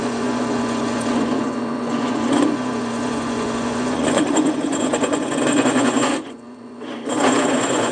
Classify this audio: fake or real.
fake